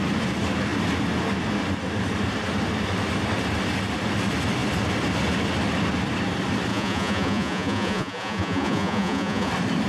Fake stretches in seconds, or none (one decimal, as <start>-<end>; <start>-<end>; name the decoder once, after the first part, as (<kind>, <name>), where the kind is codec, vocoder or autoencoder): 6.7-9.5 (vocoder, Vocos)